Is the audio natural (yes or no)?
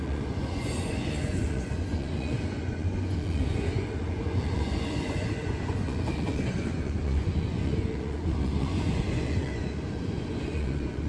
no